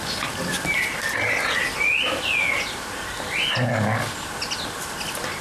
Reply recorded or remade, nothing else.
recorded